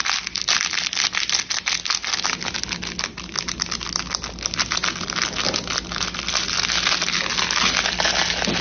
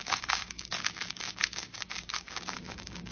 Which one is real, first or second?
first